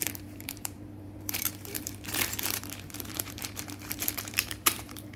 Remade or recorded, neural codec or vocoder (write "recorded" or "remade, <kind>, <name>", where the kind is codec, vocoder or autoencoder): remade, vocoder, BigVGAN v2